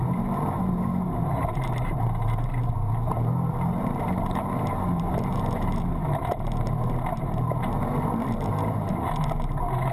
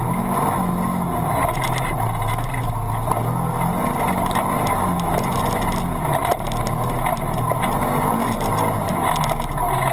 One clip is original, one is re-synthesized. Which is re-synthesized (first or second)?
first